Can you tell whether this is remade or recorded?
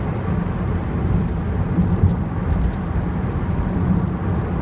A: recorded